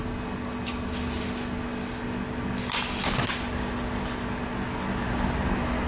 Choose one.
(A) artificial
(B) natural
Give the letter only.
B